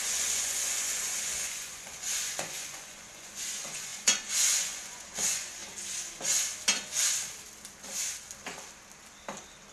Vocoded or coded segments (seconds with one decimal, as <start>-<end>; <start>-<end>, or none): 0.0-5.6